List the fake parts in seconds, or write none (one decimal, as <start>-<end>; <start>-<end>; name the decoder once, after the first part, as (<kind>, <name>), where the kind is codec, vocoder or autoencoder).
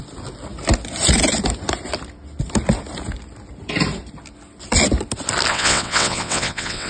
5.5-6.9 (vocoder, WaveNeXt)